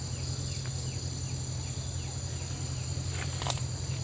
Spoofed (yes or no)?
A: no